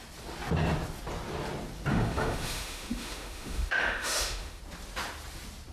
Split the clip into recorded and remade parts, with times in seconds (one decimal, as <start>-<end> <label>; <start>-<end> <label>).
0.0-1.9 recorded; 1.9-4.6 remade; 4.6-5.7 recorded